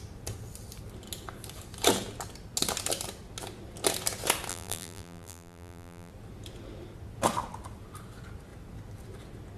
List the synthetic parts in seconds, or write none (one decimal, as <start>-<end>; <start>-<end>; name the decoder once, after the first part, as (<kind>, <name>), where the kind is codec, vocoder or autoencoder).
4.5-6.1 (vocoder, BigVGAN v2)

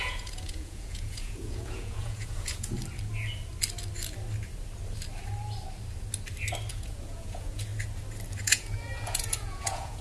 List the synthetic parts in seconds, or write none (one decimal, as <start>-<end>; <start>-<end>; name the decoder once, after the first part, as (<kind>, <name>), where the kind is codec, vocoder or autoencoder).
0.0-2.8 (vocoder, Vocos); 6.7-7.7; 8.4-10.0

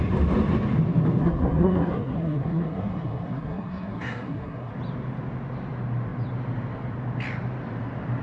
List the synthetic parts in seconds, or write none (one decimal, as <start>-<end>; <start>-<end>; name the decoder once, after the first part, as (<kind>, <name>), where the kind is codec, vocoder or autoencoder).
1.2-4.7 (codec, SNAC)

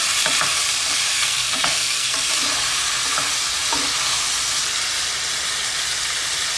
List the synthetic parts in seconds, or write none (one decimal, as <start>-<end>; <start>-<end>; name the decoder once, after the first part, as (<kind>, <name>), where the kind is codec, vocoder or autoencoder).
1.1-2.3 (codec, SNAC)